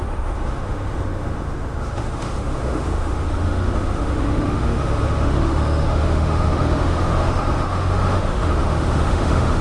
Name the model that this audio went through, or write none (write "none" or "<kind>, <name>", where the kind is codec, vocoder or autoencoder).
autoencoder, DAC-VAE